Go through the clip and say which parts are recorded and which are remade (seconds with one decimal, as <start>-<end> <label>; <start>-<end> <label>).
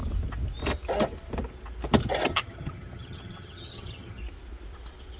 0.0-2.3 recorded; 2.3-4.2 remade; 4.2-5.2 recorded